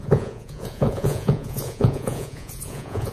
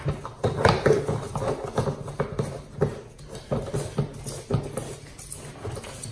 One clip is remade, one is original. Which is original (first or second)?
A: second